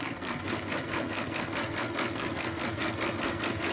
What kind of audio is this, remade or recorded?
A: remade